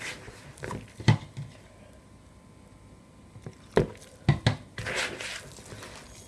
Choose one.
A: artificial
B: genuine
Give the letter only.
B